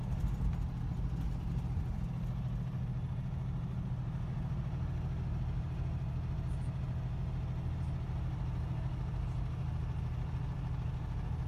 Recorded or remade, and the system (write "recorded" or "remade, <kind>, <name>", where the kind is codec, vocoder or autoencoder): recorded